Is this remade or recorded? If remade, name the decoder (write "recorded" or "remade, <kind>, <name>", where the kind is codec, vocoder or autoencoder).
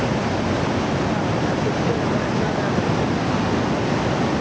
recorded